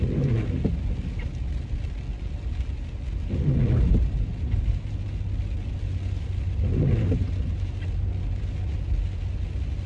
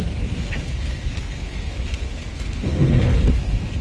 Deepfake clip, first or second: second